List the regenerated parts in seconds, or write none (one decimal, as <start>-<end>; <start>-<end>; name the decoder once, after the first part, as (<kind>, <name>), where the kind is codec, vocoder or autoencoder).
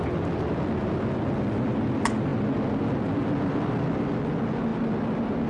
none